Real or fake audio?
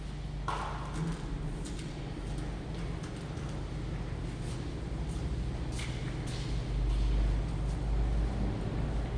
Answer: real